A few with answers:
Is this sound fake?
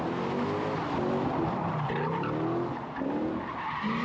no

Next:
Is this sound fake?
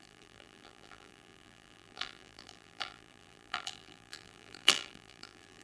yes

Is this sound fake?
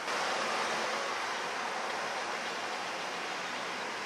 no